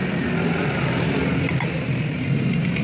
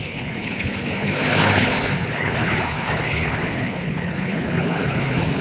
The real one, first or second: first